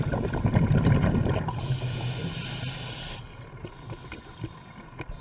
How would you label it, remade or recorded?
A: recorded